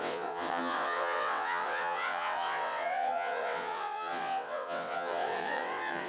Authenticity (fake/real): fake